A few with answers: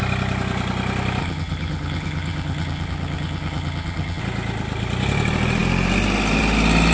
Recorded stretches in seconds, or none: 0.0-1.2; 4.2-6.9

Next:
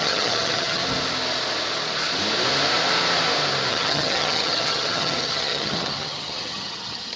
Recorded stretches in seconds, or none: 0.8-3.7